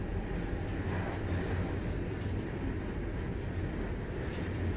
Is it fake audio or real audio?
real